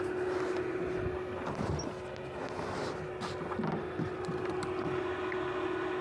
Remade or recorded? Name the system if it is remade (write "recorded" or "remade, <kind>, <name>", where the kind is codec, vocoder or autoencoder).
recorded